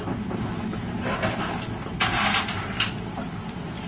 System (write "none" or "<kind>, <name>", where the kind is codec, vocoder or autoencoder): none